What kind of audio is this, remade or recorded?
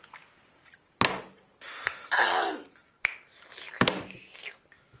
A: recorded